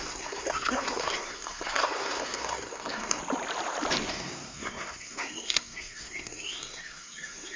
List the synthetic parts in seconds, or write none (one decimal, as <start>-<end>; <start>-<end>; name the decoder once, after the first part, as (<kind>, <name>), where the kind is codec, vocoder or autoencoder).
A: 0.0-3.2 (codec, SNAC); 4.1-7.6